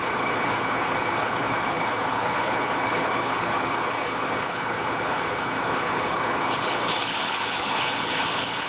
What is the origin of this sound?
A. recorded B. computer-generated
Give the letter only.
B